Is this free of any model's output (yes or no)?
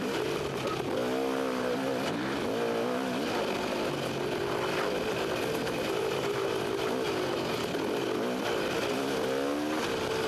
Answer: yes